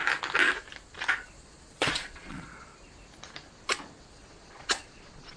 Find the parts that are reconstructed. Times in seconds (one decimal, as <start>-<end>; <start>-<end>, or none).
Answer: 1.4-2.7; 4.1-5.4